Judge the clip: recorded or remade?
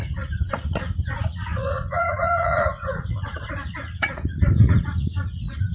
remade